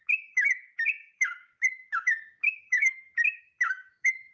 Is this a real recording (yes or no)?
no